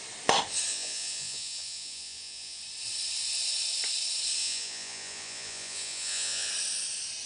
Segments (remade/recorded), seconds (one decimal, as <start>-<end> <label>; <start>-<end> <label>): 0.0-0.7 recorded; 0.7-2.6 remade; 2.6-4.4 recorded; 4.4-6.5 remade; 6.5-7.3 recorded